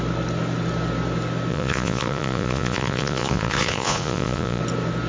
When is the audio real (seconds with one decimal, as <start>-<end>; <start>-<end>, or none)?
0.0-1.5; 4.6-5.1